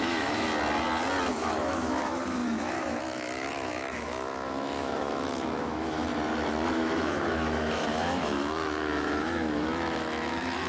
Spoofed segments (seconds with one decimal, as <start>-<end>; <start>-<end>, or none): 0.0-0.5; 1.3-6.1; 6.7-10.7